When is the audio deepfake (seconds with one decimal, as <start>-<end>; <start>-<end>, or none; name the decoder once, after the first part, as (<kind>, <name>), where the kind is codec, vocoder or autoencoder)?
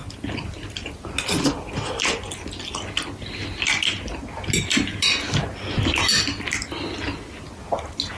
none